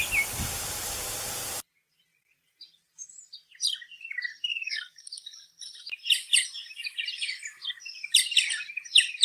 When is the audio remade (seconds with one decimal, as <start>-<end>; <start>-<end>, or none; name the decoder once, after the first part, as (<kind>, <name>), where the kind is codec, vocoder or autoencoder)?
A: 4.5-5.5 (codec, DAC)